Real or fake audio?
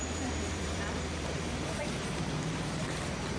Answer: fake